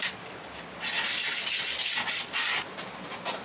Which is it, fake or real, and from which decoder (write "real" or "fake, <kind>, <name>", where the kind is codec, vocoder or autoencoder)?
real